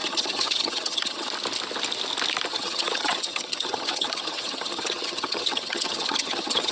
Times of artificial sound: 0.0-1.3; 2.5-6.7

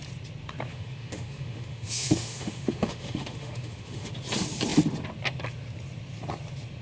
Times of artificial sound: 0.7-4.1

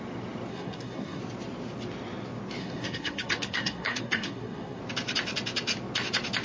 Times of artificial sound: 0.5-1.2; 2.6-4.8

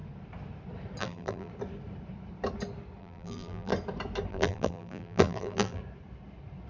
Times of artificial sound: 1.0-1.5; 3.0-3.7; 4.3-5.8

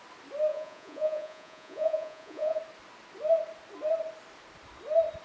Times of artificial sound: 0.5-2.6

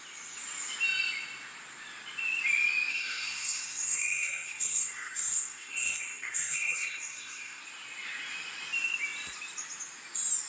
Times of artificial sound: 2.9-7.6

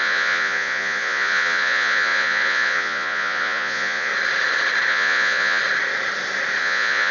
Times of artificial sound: 0.0-4.1; 4.9-5.6; 6.6-7.1